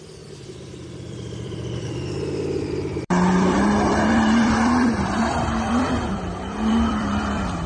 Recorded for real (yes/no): no